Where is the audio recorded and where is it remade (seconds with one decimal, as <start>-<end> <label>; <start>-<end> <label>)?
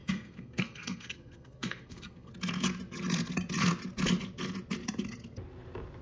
0.0-2.3 remade; 2.3-6.0 recorded